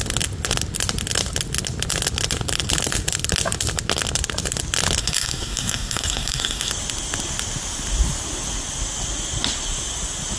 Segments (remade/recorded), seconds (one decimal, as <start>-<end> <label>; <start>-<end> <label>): 0.0-5.0 recorded; 5.0-6.7 remade; 6.7-10.4 recorded